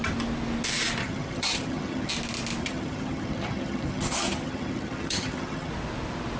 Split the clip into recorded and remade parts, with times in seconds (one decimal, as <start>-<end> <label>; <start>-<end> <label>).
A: 0.0-1.0 recorded; 1.0-2.1 remade; 2.1-2.6 recorded; 2.6-5.7 remade; 5.7-6.4 recorded